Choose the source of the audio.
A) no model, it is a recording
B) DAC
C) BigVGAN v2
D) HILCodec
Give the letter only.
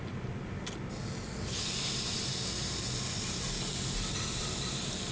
A